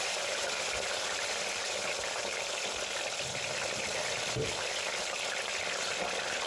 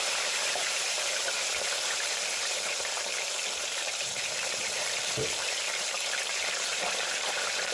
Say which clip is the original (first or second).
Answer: first